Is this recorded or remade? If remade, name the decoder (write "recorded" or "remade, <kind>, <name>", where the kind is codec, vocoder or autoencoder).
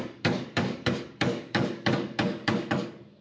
remade, codec, DAC